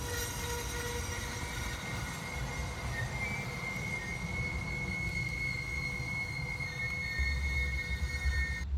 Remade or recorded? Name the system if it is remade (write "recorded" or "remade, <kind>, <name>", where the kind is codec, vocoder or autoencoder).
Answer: recorded